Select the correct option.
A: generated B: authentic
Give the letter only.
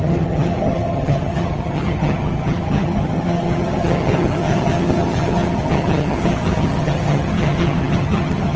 A